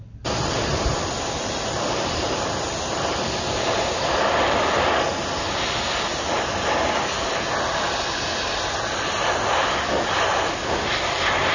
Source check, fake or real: real